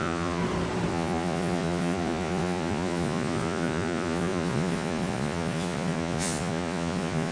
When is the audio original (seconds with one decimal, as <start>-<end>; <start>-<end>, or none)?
0.4-0.9